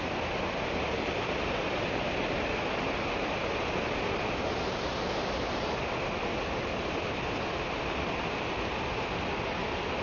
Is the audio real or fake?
real